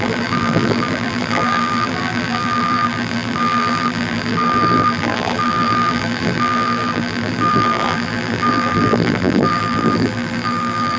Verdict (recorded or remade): remade